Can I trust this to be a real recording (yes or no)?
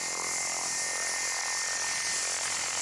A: yes